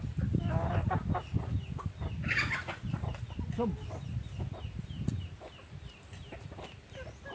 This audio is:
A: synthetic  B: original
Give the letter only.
B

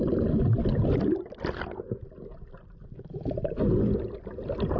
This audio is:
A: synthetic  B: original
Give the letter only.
B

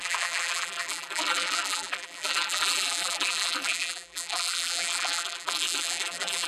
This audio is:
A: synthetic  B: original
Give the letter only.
A